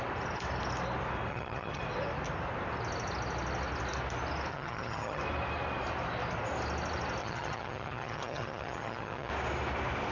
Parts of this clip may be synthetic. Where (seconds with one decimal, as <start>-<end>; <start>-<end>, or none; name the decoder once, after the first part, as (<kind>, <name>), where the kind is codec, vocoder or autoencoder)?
1.3-1.8 (vocoder, HiFi-GAN); 4.5-5.2; 7.2-9.3